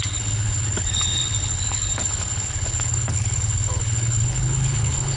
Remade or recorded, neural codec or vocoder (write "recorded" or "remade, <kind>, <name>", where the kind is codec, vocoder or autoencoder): remade, codec, HILCodec